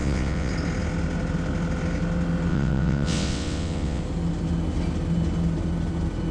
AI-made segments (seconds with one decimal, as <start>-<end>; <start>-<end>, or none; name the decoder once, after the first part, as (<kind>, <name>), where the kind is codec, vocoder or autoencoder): 0.0-0.5 (vocoder, WaveNeXt); 2.5-4.0